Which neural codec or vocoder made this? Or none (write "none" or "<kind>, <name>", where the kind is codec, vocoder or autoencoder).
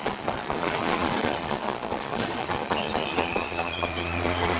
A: vocoder, Vocos